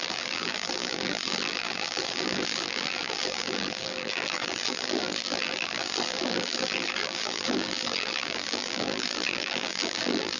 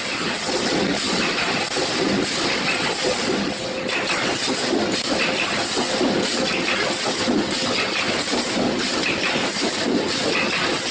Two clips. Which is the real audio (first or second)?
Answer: second